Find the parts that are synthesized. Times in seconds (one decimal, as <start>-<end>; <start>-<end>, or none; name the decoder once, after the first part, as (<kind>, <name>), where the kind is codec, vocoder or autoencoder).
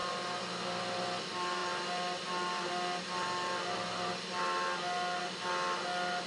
none